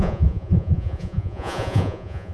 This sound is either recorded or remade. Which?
remade